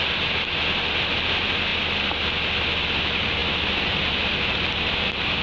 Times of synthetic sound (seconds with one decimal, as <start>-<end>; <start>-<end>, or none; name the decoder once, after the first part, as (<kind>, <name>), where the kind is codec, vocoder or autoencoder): none

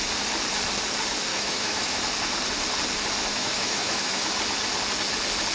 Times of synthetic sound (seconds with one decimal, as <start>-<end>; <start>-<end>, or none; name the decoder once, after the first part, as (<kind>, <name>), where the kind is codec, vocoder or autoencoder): 1.3-2.0 (autoencoder, DAC-VAE); 3.3-4.3

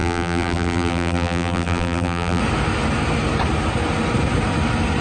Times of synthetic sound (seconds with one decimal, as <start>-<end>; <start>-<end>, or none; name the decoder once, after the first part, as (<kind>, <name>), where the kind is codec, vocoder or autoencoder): 0.0-2.4 (vocoder, BigVGAN v2)

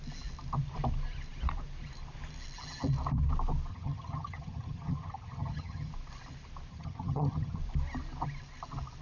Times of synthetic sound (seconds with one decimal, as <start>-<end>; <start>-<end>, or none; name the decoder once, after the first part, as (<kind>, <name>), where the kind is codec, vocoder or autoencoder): 3.7-5.9 (vocoder, HiFi-GAN); 6.7-7.6

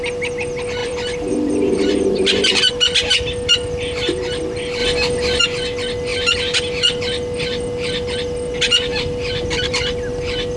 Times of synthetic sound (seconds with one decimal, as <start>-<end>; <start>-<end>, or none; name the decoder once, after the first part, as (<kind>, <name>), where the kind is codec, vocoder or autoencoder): 0.8-2.7 (vocoder, BigVGAN v2); 8.9-9.9

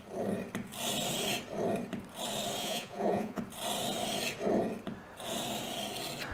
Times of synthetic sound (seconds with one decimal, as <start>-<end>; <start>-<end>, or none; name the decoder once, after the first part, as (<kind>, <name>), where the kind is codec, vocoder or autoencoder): 2.6-3.4 (vocoder, Vocos)

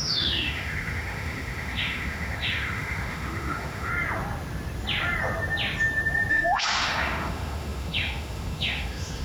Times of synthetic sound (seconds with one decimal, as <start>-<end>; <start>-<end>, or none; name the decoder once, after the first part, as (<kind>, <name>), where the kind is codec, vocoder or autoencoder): 0.0-3.9 (autoencoder, DAC-VAE); 6.3-9.2

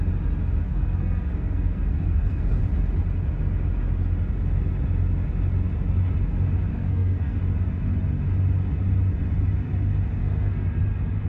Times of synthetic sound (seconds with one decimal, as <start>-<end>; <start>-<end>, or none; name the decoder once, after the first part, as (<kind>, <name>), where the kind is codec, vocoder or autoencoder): 0.6-2.6 (codec, SNAC); 6.7-7.4; 10.2-10.8